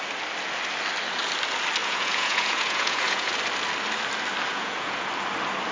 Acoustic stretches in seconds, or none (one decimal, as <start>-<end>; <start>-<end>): 0.0-1.8; 3.3-4.5; 5.1-5.7